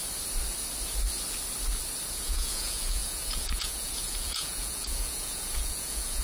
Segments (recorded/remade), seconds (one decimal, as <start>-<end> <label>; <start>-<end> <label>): 0.0-2.1 recorded; 2.1-6.2 remade